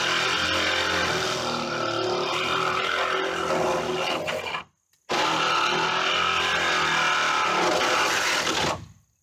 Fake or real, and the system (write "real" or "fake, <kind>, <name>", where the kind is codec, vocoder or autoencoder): real